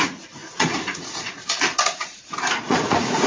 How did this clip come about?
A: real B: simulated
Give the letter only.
B